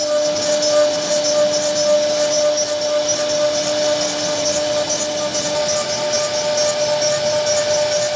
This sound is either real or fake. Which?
real